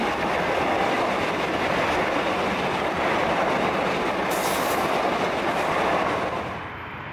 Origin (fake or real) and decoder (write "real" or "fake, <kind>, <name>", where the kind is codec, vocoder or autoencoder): real